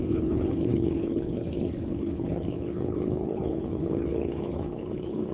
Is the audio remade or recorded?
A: remade